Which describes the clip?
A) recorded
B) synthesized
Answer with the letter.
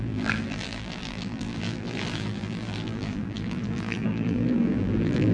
B